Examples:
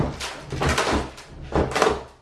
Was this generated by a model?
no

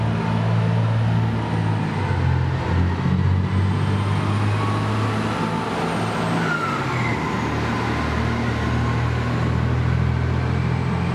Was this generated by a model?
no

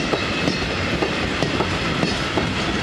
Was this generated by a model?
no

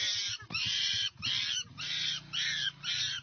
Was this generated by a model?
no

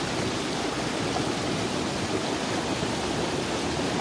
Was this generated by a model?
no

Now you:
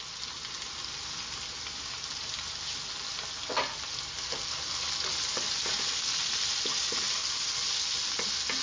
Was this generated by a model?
no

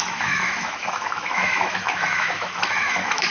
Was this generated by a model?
yes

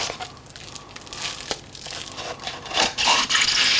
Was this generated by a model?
no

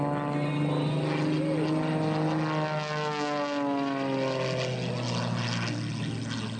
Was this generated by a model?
no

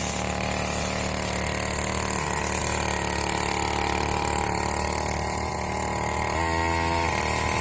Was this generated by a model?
no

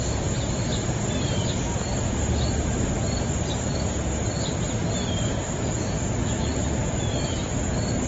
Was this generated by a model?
no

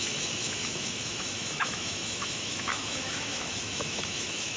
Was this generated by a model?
yes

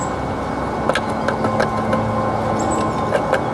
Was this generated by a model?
no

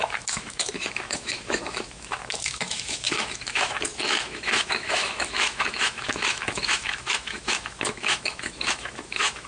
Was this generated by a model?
yes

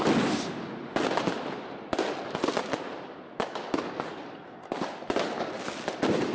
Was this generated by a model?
no